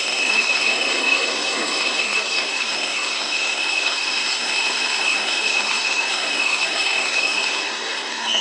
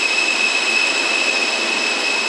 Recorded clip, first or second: second